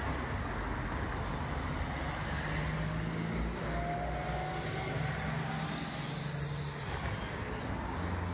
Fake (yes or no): no